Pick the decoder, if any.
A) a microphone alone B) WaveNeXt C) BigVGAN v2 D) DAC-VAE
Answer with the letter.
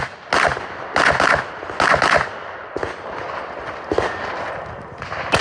A